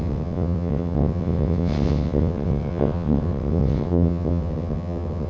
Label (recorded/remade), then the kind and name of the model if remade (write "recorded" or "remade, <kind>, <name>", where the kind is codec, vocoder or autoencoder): remade, vocoder, WaveNeXt